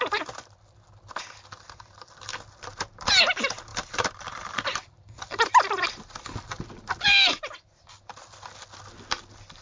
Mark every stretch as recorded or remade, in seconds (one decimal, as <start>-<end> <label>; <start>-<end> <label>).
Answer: 0.0-3.7 recorded; 3.7-7.9 remade; 7.9-9.6 recorded